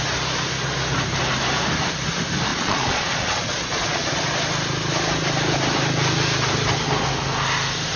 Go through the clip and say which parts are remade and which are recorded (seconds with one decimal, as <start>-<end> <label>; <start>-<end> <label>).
0.0-2.5 recorded; 2.5-4.1 remade; 4.1-8.0 recorded